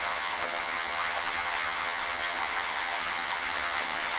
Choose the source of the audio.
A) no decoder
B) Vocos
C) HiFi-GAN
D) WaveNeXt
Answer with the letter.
C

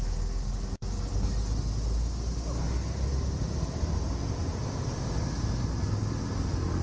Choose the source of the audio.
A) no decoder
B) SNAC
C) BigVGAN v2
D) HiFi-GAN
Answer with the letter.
A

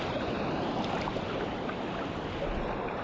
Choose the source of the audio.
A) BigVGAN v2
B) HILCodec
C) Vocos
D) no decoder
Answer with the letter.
A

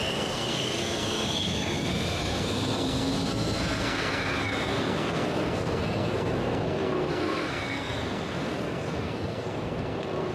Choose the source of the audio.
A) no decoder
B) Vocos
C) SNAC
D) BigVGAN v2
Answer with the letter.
C